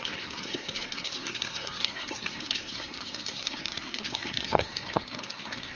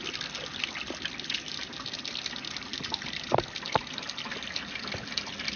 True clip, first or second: second